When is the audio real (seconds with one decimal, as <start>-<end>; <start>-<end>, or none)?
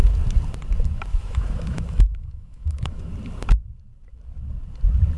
0.0-1.1; 3.1-5.2